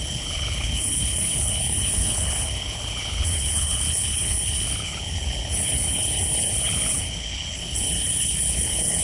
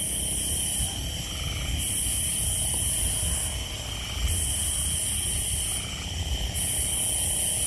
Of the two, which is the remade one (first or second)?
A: first